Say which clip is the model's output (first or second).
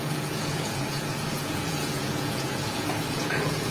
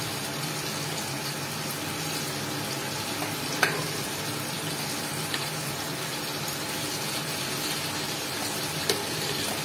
first